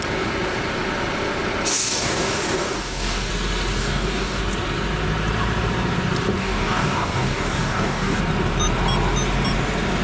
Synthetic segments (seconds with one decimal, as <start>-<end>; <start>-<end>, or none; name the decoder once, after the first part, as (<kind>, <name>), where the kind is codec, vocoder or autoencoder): 1.7-3.3 (codec, DAC); 3.8-4.4; 6.4-8.2